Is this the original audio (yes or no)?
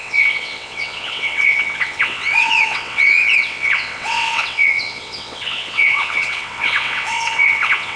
no